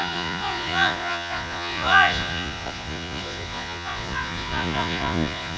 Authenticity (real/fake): fake